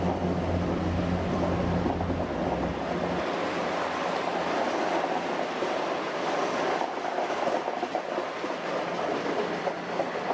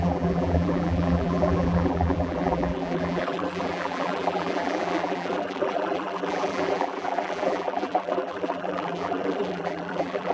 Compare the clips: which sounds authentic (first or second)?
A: first